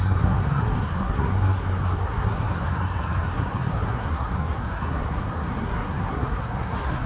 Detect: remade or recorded remade